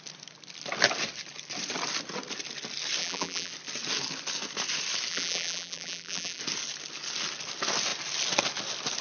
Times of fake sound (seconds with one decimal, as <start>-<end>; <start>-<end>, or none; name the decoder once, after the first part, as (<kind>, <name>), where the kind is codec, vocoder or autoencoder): 3.0-3.5 (vocoder, BigVGAN v2); 5.1-6.4